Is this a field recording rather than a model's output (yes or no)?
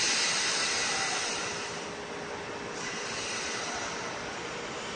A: yes